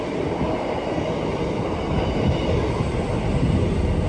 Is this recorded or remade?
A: recorded